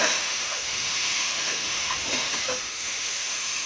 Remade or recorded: remade